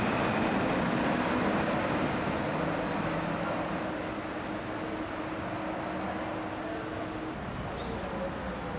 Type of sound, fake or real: real